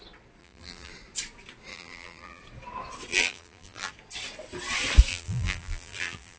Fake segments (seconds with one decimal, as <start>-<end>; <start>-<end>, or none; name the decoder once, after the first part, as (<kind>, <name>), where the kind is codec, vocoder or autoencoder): 0.4-0.9 (vocoder, BigVGAN v2); 1.7-2.4; 3.1-3.9; 5.1-6.4